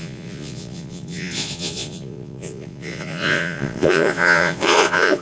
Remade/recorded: remade